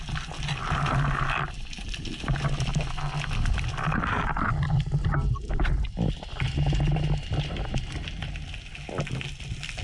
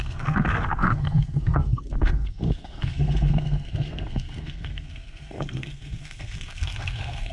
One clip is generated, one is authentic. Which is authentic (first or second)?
first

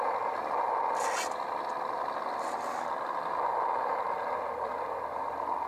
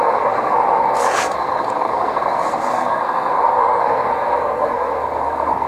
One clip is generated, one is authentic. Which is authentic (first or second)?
first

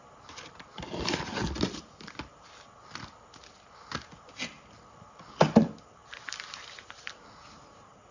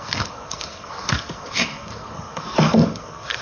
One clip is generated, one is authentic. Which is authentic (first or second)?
first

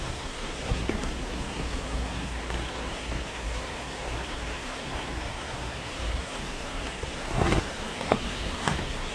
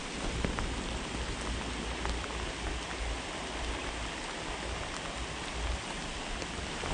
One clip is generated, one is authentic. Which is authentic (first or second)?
second